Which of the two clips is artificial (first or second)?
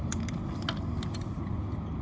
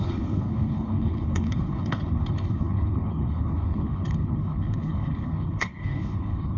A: second